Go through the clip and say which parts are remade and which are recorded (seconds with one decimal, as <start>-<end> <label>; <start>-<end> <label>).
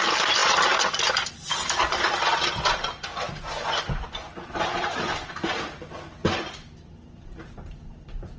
0.0-8.4 remade